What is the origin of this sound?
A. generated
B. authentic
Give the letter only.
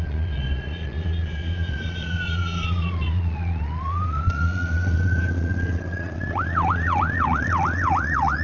A